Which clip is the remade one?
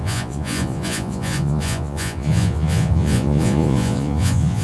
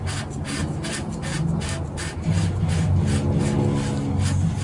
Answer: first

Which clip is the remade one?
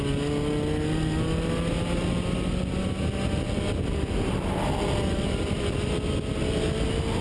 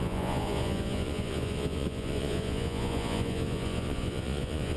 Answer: second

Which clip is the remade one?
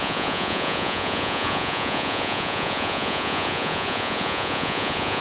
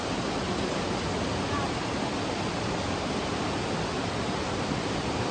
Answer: first